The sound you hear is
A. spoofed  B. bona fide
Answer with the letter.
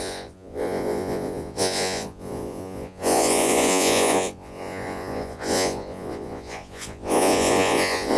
A